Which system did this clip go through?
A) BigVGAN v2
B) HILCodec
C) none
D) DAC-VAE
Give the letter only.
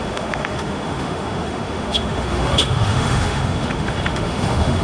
D